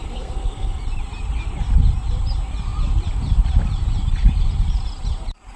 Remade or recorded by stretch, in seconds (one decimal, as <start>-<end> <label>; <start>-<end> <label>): 0.0-0.8 remade; 0.8-5.6 recorded

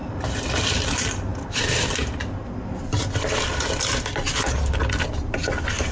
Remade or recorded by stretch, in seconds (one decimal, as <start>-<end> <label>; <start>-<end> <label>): 0.0-5.9 recorded

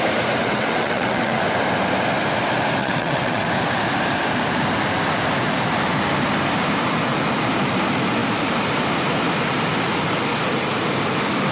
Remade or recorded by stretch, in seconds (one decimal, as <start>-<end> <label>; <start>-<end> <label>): 0.0-0.4 recorded; 0.4-1.4 remade; 1.4-2.8 recorded; 2.8-3.5 remade; 3.5-11.5 recorded

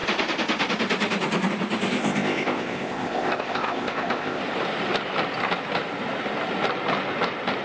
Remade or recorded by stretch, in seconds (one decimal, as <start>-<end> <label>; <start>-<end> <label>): 0.0-2.0 recorded; 2.0-4.4 remade; 4.4-7.6 recorded

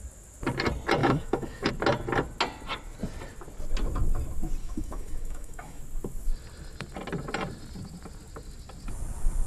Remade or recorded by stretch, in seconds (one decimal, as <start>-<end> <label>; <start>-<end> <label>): 0.0-1.0 recorded; 1.0-1.7 remade; 1.7-4.6 recorded; 4.6-5.8 remade; 5.8-9.5 recorded

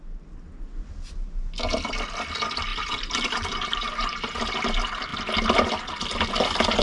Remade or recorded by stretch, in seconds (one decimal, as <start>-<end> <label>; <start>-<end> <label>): 0.0-2.7 recorded; 2.7-4.4 remade; 4.4-6.8 recorded